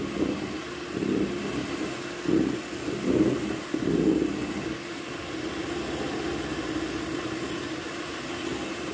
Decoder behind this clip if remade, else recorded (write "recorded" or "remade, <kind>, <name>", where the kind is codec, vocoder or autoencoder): recorded